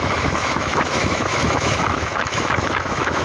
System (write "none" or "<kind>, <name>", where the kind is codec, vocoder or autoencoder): autoencoder, DAC-VAE